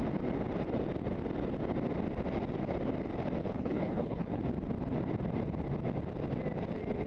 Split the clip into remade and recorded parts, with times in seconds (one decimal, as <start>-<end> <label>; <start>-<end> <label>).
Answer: 0.0-3.4 recorded; 3.4-4.4 remade; 4.4-7.1 recorded